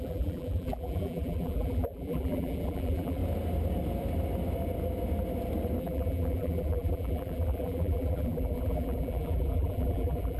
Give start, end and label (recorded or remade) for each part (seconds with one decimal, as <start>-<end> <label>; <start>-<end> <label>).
0.0-3.2 remade; 3.2-5.8 recorded; 5.8-10.4 remade